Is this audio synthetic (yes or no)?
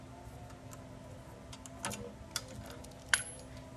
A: no